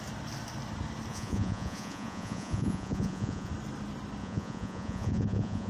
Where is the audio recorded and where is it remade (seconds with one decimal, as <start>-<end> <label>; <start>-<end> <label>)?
0.0-1.1 recorded; 1.1-3.5 remade; 3.5-4.2 recorded; 4.2-5.7 remade